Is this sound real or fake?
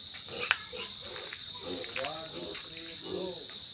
real